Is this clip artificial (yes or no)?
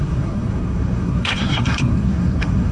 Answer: yes